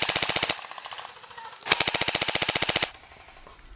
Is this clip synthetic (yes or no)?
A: no